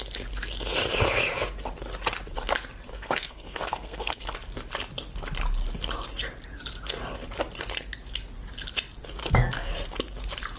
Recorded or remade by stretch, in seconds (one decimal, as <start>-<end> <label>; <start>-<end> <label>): 0.0-2.9 recorded; 2.9-4.2 remade; 4.2-9.2 recorded; 9.2-9.7 remade; 9.7-10.6 recorded